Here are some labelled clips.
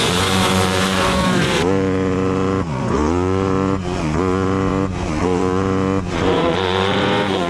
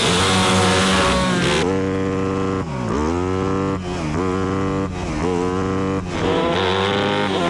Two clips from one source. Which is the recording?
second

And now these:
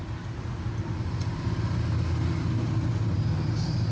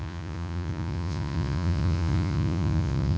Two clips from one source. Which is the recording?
first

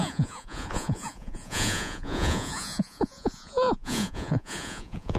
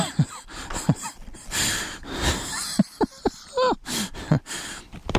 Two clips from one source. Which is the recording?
second